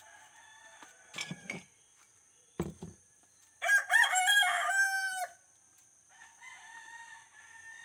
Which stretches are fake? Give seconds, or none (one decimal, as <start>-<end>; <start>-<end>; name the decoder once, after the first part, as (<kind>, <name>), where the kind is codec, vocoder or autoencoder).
1.4-5.2 (vocoder, BigVGAN v2)